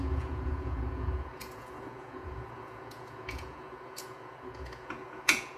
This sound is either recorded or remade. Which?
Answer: remade